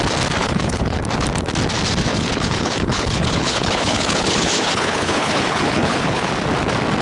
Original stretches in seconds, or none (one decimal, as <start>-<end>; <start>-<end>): 0.0-0.4; 1.0-2.1; 6.3-7.0